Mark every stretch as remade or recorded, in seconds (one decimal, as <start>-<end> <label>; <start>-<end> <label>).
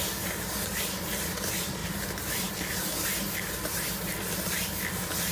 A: 0.0-5.3 recorded